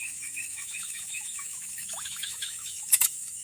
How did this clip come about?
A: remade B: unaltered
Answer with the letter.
A